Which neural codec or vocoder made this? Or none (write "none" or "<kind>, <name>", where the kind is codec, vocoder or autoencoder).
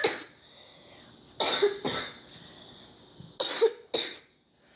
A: none